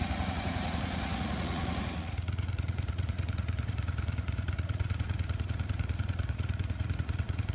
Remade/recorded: remade